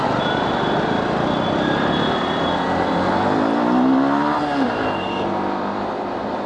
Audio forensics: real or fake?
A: fake